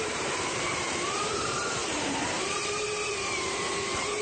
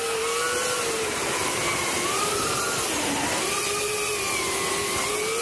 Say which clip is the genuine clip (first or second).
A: second